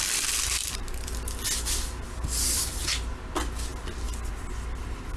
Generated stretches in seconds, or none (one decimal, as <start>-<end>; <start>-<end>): 0.6-1.1